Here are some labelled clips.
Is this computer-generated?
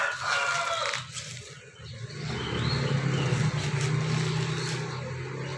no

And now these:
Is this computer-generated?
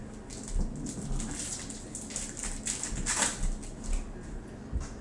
no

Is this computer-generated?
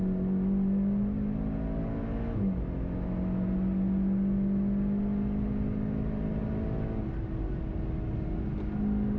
no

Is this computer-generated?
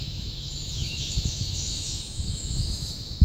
yes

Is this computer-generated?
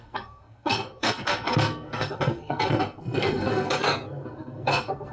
yes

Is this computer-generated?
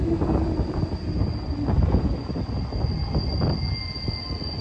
no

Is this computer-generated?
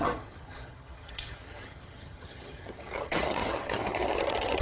yes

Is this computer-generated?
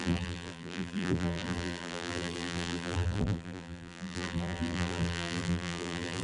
yes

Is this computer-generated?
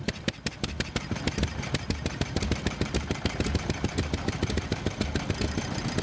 no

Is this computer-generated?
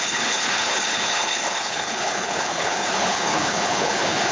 yes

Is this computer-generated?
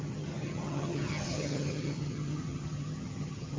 yes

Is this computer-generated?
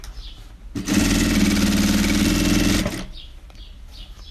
no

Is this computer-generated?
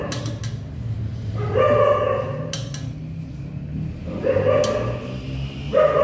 no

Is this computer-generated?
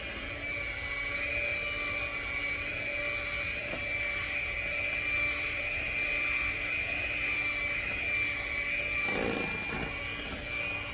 no